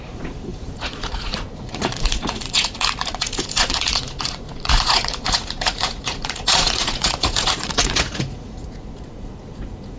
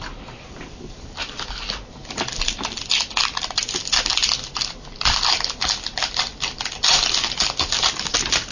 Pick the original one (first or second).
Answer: second